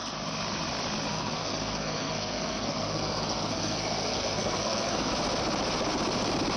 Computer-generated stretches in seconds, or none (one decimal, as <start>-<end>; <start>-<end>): 1.1-5.1